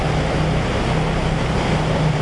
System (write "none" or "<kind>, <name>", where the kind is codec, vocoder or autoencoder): none